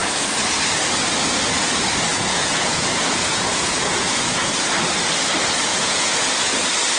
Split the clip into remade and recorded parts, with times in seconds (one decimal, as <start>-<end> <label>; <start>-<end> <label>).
0.0-2.1 recorded; 2.1-4.6 remade; 4.6-5.7 recorded; 5.7-6.5 remade; 6.5-7.0 recorded